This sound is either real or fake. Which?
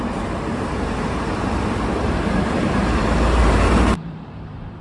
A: fake